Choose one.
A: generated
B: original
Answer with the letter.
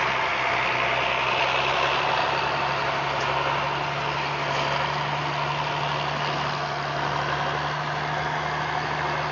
B